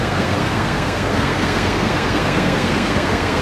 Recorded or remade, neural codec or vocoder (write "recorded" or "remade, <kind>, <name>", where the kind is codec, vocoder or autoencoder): remade, codec, SNAC